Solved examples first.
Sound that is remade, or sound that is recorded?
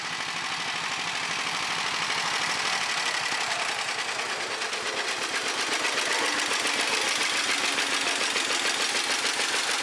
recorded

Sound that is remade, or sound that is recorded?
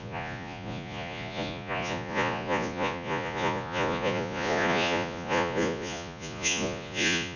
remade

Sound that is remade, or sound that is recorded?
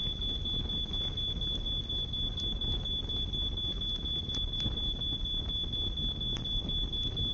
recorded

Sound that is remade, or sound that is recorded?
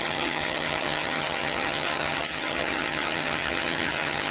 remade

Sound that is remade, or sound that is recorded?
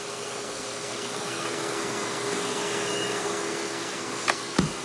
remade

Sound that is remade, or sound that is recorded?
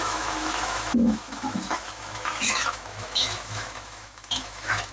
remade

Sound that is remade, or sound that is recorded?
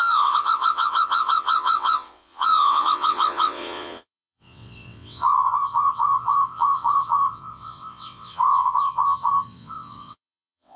remade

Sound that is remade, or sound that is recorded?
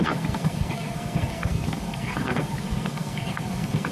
remade